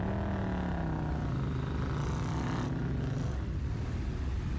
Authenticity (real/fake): real